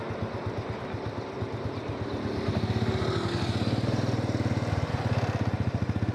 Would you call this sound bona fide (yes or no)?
yes